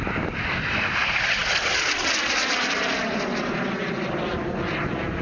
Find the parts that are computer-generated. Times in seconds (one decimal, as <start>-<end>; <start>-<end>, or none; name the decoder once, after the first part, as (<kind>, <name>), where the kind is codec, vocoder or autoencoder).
none